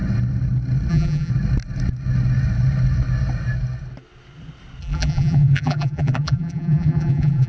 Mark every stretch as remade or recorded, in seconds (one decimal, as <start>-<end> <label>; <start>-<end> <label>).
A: 0.0-0.9 recorded; 0.9-1.3 remade; 1.3-4.8 recorded; 4.8-7.5 remade